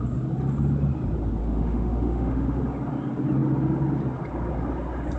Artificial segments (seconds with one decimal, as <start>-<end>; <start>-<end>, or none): 1.4-2.6